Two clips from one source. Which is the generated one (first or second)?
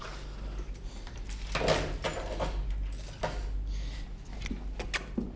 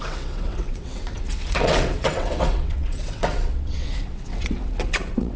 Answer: second